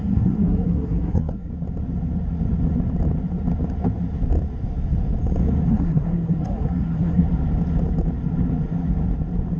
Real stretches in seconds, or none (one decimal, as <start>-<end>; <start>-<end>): 1.5-5.7; 7.2-9.6